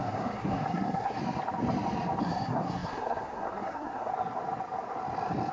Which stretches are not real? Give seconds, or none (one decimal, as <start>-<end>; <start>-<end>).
0.0-1.2; 2.2-4.1